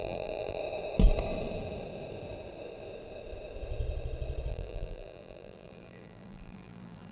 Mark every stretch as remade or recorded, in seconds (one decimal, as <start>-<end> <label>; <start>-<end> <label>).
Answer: 0.0-0.6 remade; 0.6-4.5 recorded; 4.5-7.1 remade